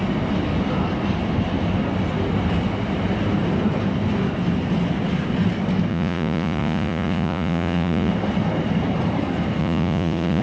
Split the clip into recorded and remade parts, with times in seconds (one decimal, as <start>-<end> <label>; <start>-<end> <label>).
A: 0.0-5.9 recorded; 5.9-8.1 remade; 8.1-9.6 recorded; 9.6-10.4 remade